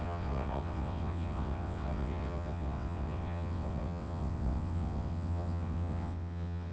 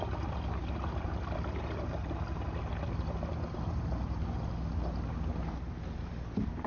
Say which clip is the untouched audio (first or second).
second